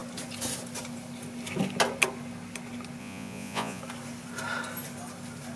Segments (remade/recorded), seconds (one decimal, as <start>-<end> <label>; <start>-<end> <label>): 0.0-3.0 recorded; 3.0-3.8 remade; 3.8-5.6 recorded